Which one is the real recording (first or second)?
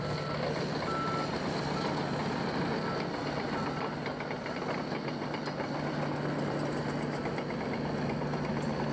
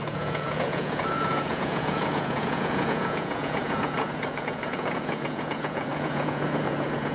first